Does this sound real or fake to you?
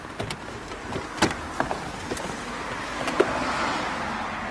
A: real